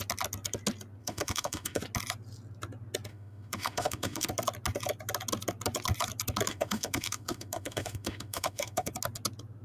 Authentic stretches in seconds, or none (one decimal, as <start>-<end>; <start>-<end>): 0.0-1.0; 1.8-3.1; 4.3-6.5; 8.9-9.6